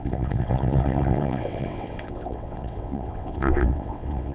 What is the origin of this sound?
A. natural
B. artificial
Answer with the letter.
B